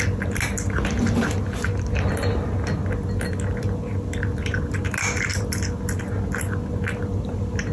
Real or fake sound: real